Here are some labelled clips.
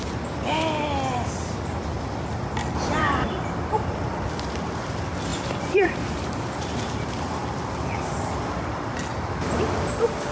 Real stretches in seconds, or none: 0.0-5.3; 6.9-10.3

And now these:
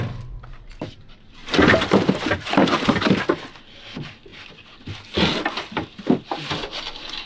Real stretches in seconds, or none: 0.0-1.4; 3.0-7.3

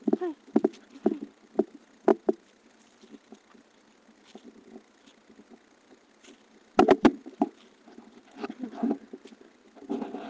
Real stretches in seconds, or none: 0.0-8.2; 8.8-10.3

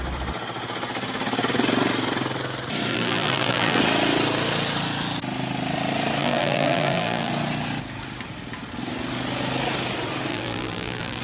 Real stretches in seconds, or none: 0.0-2.9; 3.8-6.2; 7.3-10.3

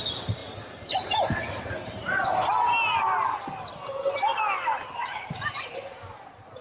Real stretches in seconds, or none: 0.0-0.4; 1.6-6.6

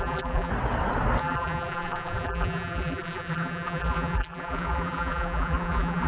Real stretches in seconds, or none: 0.5-1.2